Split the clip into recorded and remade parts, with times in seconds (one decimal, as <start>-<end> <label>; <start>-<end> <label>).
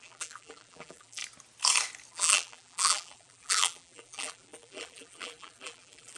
0.0-1.2 remade; 1.2-2.1 recorded; 2.1-6.2 remade